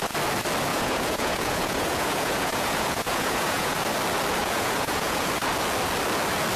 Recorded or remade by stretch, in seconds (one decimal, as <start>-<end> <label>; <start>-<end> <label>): 0.0-0.7 recorded; 0.7-3.8 remade; 3.8-4.4 recorded; 4.4-5.3 remade; 5.3-6.6 recorded